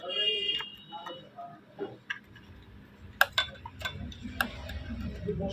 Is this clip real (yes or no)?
yes